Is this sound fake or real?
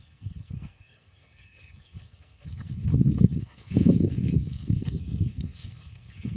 fake